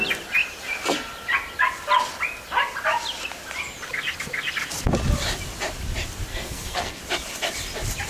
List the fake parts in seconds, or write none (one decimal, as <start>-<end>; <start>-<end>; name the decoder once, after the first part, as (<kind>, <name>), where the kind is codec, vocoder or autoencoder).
6.3-7.0 (codec, SNAC)